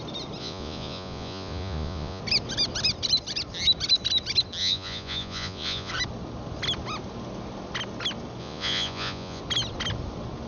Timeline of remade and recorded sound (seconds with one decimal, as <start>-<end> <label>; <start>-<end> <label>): 0.0-0.4 recorded; 0.4-2.2 remade; 2.2-4.6 recorded; 4.6-5.9 remade; 5.9-8.4 recorded; 8.4-9.4 remade; 9.4-10.5 recorded

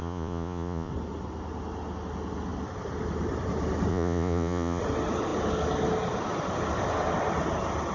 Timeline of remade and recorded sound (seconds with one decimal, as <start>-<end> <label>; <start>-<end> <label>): 0.0-0.9 remade; 0.9-3.9 recorded; 3.9-4.8 remade; 4.8-7.9 recorded

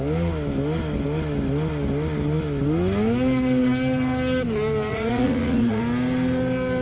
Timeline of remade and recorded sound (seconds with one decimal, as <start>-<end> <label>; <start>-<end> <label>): 0.0-4.9 recorded; 4.9-5.8 remade; 5.8-6.8 recorded

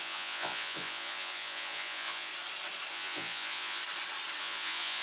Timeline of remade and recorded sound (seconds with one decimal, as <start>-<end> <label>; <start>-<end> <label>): 0.0-2.3 remade; 2.3-2.9 recorded; 2.9-3.8 remade; 3.8-4.4 recorded; 4.4-5.0 remade

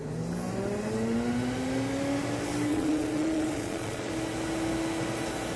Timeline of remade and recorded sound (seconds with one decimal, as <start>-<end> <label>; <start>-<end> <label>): 0.0-2.7 recorded; 2.7-4.1 remade; 4.1-5.6 recorded

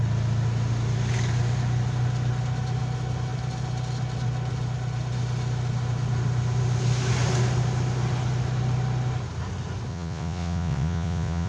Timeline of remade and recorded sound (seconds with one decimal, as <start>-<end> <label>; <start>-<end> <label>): 0.0-9.9 recorded; 9.9-11.5 remade

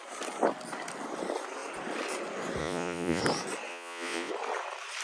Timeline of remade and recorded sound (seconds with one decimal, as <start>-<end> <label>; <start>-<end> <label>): 0.0-2.6 recorded; 2.6-3.2 remade; 3.2-3.7 recorded; 3.7-4.3 remade; 4.3-5.0 recorded